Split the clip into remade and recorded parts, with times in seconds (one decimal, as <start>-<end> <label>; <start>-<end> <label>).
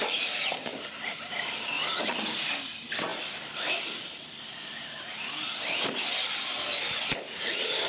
0.0-0.7 recorded; 0.7-1.3 remade; 1.3-3.1 recorded; 3.1-6.3 remade; 6.3-7.9 recorded